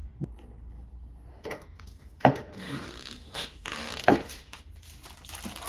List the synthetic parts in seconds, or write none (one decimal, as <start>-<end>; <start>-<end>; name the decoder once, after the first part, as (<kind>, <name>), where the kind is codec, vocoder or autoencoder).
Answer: 1.3-4.7 (autoencoder, DAC-VAE)